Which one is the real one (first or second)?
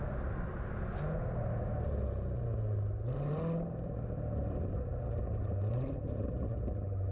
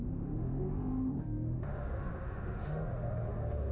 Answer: first